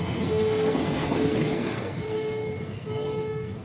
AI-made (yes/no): yes